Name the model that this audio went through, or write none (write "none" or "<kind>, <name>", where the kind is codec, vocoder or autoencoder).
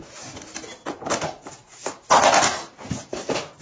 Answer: none